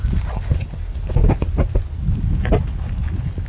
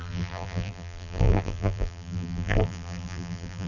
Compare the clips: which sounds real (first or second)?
first